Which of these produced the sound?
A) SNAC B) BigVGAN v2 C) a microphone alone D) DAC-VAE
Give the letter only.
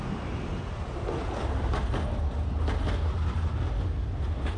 C